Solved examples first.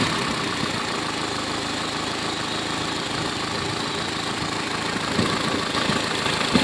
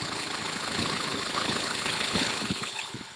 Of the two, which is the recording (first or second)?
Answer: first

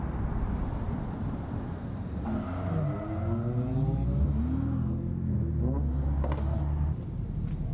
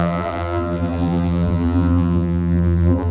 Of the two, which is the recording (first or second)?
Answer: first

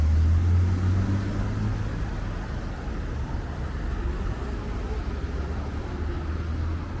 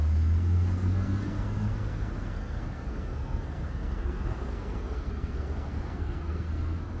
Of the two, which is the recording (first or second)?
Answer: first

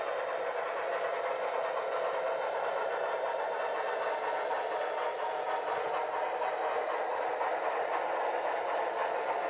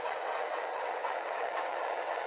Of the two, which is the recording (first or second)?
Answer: first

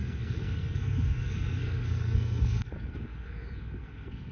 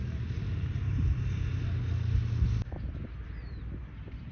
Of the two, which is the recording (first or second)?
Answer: second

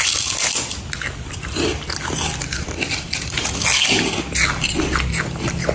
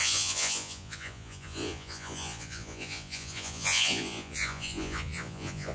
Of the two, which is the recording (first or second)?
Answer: first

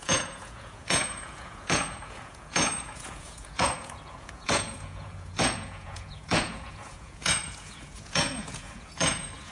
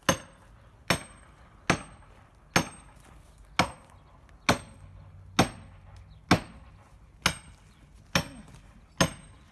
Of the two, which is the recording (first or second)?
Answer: second